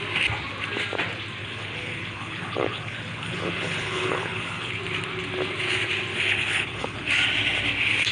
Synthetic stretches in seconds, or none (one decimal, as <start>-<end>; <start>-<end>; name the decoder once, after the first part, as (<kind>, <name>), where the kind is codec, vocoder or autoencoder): 1.4-4.7 (codec, HILCodec); 6.1-7.1